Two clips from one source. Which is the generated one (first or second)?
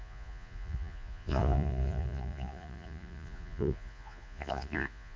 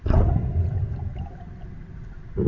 first